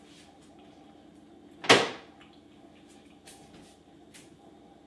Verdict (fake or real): real